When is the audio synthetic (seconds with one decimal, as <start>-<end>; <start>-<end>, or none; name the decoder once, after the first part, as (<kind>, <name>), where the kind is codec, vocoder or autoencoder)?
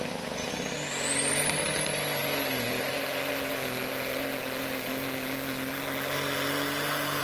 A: none